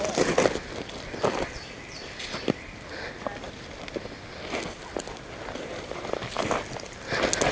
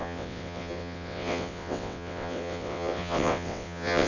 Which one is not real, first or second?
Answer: second